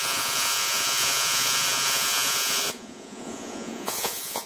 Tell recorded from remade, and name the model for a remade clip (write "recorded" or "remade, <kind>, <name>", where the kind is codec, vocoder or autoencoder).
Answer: remade, vocoder, Vocos